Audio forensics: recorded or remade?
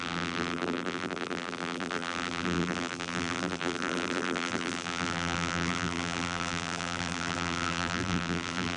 remade